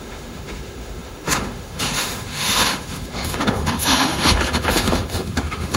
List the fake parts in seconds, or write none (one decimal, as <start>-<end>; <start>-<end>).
0.0-5.8